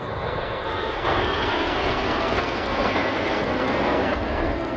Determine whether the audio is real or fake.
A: fake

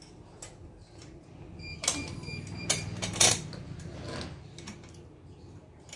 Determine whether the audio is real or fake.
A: real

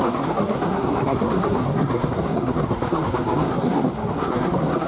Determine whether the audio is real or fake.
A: fake